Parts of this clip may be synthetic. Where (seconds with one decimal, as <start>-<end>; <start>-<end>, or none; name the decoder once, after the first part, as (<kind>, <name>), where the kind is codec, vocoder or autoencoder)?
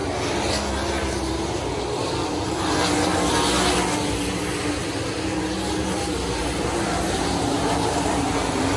6.4-8.3 (vocoder, BigVGAN v2)